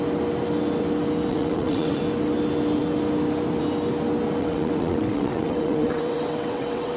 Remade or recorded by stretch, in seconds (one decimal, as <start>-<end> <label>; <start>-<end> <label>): 0.0-1.3 recorded; 1.3-2.0 remade; 2.0-4.4 recorded; 4.4-7.0 remade